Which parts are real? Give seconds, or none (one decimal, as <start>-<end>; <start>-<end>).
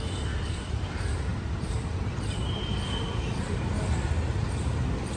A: 0.0-1.3; 2.1-5.2